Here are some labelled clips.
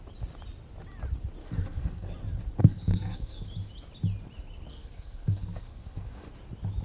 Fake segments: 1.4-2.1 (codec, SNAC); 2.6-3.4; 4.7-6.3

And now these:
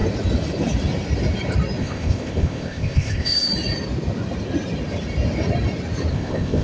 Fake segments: 1.8-3.5 (codec, ZipCodec); 6.1-6.6

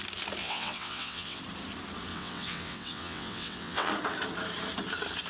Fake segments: 0.4-1.4 (vocoder, WaveNeXt); 2.1-3.9

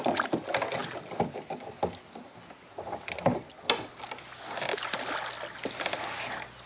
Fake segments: none

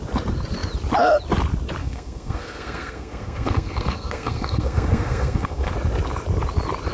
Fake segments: 1.8-5.7 (codec, SNAC)